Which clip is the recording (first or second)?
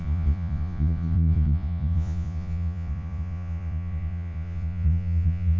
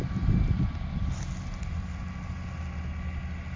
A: second